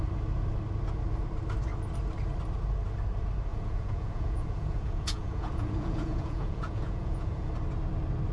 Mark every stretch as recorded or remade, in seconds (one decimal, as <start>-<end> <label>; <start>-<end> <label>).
0.0-3.5 recorded; 3.5-7.5 remade; 7.5-8.3 recorded